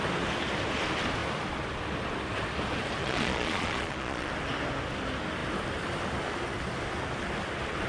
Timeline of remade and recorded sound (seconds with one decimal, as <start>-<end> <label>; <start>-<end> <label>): 0.0-3.0 recorded; 3.0-4.3 remade; 4.3-7.9 recorded